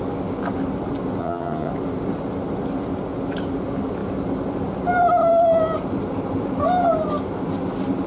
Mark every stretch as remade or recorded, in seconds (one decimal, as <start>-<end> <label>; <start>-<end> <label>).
0.0-1.2 recorded; 1.2-1.7 remade; 1.7-8.1 recorded